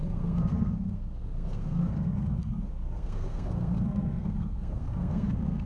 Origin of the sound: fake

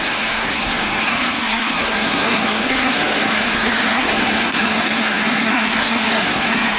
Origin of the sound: fake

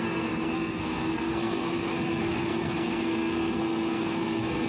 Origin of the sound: fake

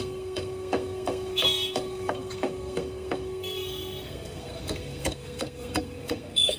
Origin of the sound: fake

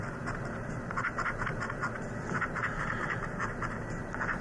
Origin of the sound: real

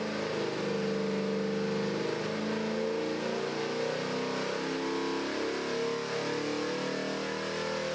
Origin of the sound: real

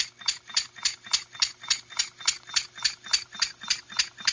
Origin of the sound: real